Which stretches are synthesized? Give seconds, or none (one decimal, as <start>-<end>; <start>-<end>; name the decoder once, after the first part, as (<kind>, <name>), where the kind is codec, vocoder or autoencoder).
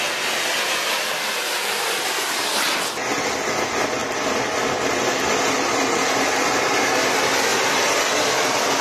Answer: none